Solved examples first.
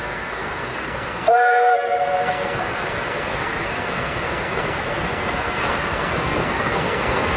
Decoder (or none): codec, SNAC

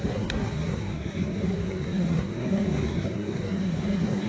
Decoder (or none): codec, SNAC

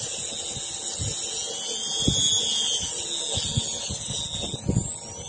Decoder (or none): none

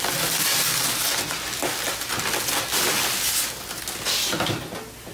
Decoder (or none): none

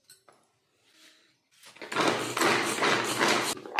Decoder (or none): none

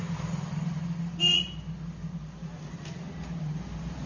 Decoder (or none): none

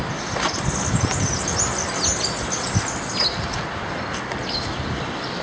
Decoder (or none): none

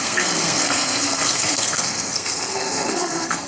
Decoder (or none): codec, SNAC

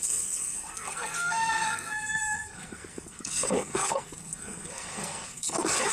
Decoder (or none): codec, SNAC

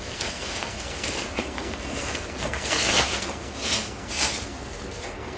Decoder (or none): codec, SNAC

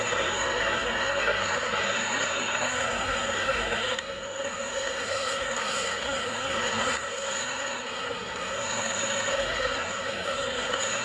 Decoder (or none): codec, SNAC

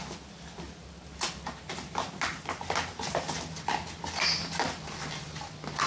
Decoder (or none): none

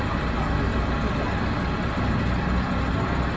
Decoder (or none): none